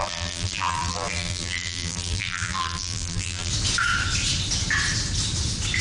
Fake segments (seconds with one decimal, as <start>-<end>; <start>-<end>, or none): 0.0-3.5